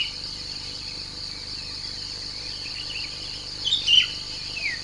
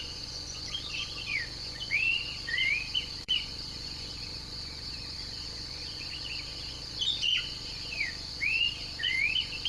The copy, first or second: second